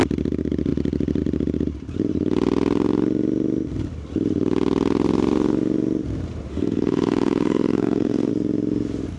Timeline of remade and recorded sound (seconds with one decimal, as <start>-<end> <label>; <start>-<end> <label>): 0.0-6.5 recorded; 6.5-8.3 remade; 8.3-9.2 recorded